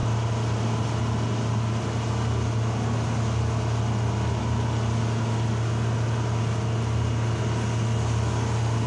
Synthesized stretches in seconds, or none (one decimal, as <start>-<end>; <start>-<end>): none